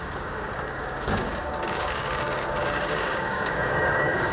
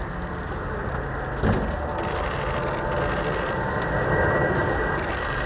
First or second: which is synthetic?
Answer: first